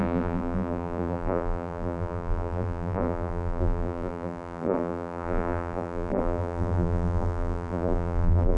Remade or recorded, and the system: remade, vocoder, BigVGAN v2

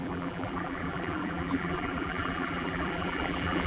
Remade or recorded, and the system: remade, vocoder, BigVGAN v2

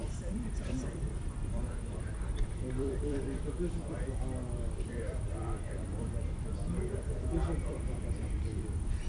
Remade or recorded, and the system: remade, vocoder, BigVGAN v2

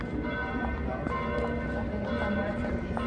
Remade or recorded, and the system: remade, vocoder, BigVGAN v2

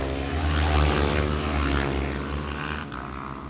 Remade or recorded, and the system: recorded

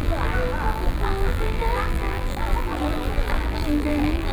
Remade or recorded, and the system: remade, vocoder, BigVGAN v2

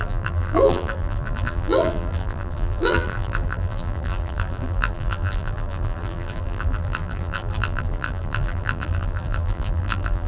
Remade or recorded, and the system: remade, vocoder, BigVGAN v2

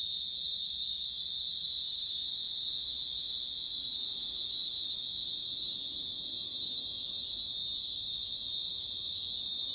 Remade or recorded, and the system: recorded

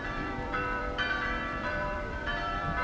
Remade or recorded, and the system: remade, vocoder, BigVGAN v2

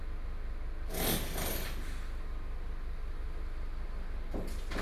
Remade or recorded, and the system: recorded